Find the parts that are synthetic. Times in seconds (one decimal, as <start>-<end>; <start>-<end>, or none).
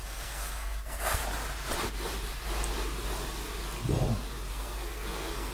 0.0-1.2; 4.5-5.5